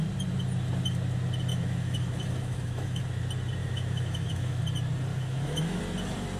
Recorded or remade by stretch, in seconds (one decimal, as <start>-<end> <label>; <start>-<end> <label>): 0.0-1.5 recorded; 1.5-3.0 remade; 3.0-3.6 recorded; 3.6-4.6 remade; 4.6-5.1 recorded; 5.1-5.8 remade; 5.8-6.4 recorded